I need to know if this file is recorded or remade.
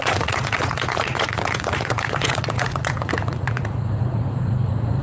remade